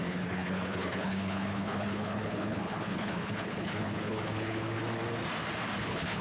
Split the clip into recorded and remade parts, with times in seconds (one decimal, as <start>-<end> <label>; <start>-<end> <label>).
0.0-4.8 remade; 4.8-5.8 recorded; 5.8-6.2 remade

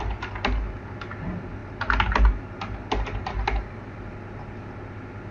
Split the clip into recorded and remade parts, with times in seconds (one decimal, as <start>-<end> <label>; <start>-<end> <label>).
0.0-5.3 recorded

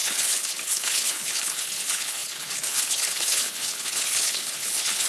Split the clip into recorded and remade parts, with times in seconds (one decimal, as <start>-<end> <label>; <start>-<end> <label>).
0.0-5.1 remade

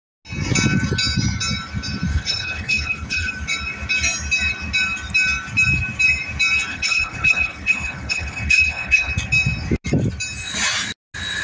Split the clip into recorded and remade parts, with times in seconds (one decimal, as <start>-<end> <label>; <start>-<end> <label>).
0.0-2.1 recorded; 2.1-3.3 remade; 3.3-6.7 recorded; 6.7-9.1 remade; 9.1-11.4 recorded

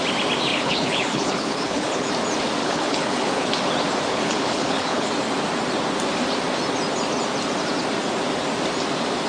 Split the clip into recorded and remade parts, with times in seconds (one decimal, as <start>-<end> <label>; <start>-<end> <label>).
0.0-0.5 recorded; 0.5-2.1 remade; 2.1-2.6 recorded; 2.6-3.5 remade; 3.5-4.1 recorded; 4.1-5.1 remade; 5.1-9.3 recorded